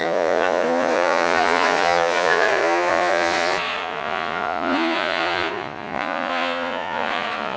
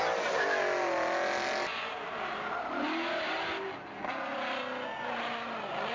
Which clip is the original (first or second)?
second